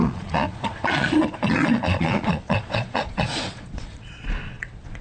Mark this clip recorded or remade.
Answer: remade